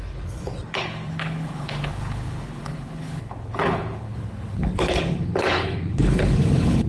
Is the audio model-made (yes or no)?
yes